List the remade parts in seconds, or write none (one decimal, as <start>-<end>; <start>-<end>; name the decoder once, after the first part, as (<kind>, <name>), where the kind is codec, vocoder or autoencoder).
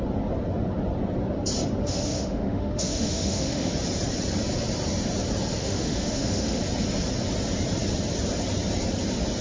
1.8-3.7 (autoencoder, DAC-VAE); 5.6-6.6